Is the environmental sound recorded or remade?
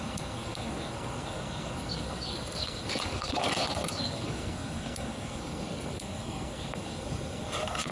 remade